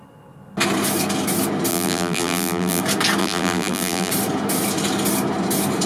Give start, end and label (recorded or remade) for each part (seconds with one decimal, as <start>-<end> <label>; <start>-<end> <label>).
0.0-1.7 recorded; 1.7-2.8 remade; 2.8-3.2 recorded; 3.2-4.1 remade; 4.1-5.9 recorded